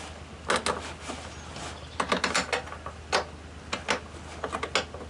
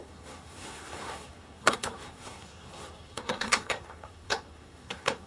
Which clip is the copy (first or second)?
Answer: second